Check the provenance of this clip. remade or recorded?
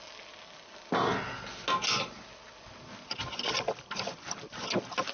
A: recorded